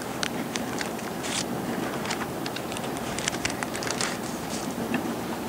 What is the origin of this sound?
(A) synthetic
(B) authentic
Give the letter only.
A